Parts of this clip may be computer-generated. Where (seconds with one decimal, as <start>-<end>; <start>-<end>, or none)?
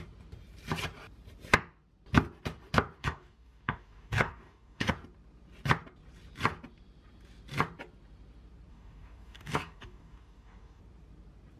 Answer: 3.0-4.9; 8.7-10.8